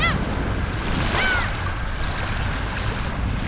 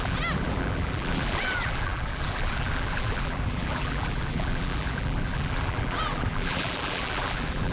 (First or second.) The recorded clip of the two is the first